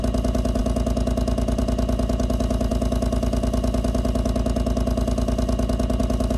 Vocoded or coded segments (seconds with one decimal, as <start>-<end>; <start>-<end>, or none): none